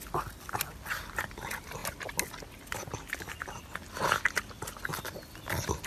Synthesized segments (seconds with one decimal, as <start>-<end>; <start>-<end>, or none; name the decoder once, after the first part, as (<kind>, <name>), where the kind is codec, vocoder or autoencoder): none